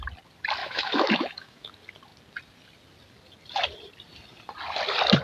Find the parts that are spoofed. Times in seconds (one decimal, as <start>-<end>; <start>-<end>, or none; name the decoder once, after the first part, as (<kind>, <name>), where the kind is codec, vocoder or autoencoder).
0.6-1.7 (autoencoder, DAC-VAE)